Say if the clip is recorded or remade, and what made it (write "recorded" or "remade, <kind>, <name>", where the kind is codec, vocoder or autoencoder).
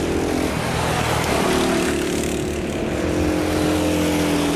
recorded